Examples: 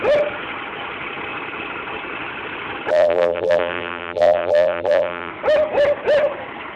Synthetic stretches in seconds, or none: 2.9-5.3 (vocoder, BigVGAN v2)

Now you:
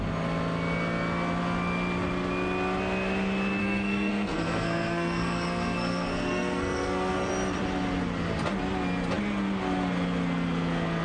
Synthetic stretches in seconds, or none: 3.6-7.3 (codec, SNAC)

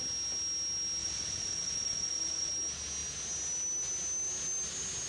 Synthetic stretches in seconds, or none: 1.0-2.5 (vocoder, Vocos)

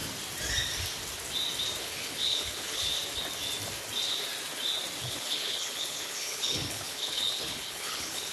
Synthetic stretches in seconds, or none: 1.8-2.9 (codec, HILCodec); 5.0-8.3

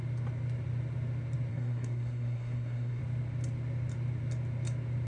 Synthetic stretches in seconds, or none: 1.5-3.0 (codec, SNAC)